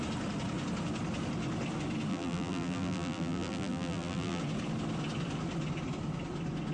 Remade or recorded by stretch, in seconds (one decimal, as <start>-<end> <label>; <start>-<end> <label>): 0.0-2.1 recorded; 2.1-4.4 remade; 4.4-6.7 recorded